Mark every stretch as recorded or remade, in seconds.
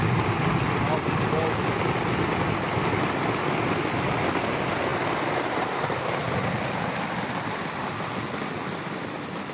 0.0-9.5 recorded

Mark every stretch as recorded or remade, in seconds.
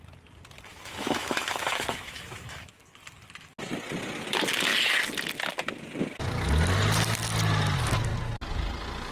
0.0-0.7 recorded; 0.7-2.8 remade; 2.8-9.1 recorded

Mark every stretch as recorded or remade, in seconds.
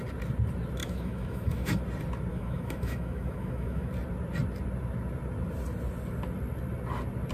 0.0-0.8 recorded; 0.8-1.8 remade; 1.8-2.3 recorded; 2.3-3.9 remade; 3.9-7.3 recorded